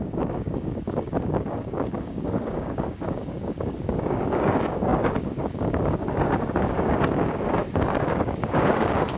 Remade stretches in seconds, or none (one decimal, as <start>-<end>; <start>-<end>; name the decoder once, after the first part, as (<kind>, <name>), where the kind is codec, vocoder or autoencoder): 0.0-9.2 (codec, DAC)